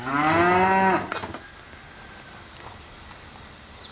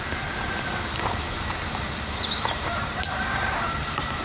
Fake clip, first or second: second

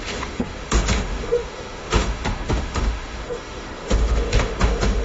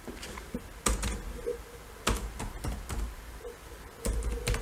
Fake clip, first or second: first